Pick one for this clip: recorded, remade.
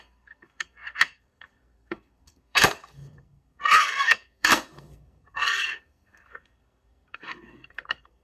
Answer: remade